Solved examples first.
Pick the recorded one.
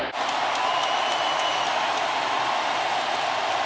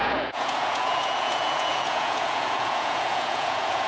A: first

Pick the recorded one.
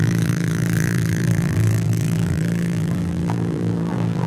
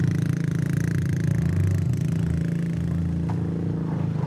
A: second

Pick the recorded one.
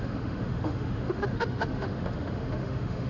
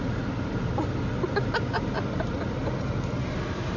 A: second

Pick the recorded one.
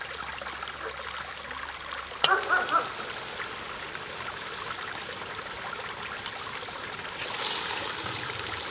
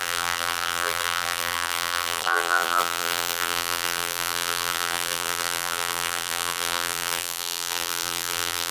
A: first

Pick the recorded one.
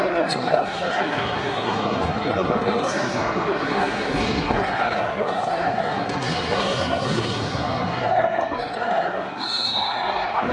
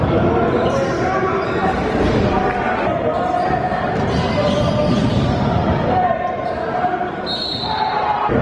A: second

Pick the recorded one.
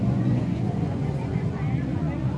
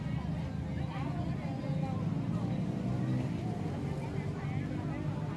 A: second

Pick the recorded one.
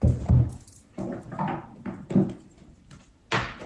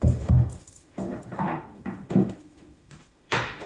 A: first